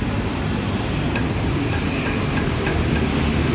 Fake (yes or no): no